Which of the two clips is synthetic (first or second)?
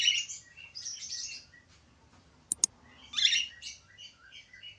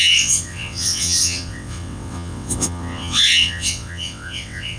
second